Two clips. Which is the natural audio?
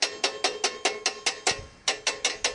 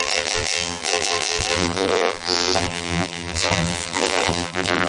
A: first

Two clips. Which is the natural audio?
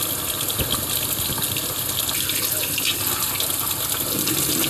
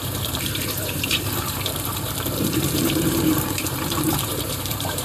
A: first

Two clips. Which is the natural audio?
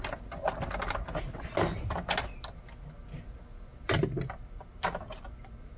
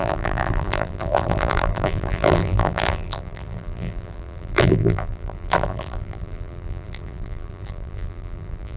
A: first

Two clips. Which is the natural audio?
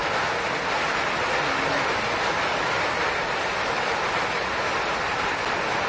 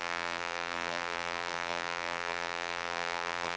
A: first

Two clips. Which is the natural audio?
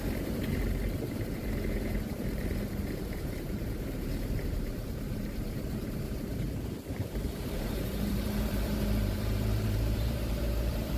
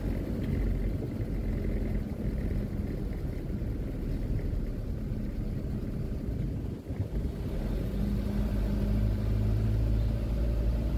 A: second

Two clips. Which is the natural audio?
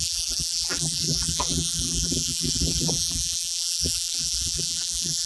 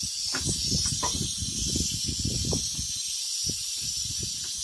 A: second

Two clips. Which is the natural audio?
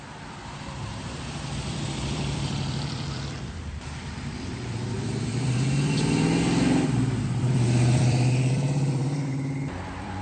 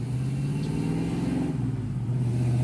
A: second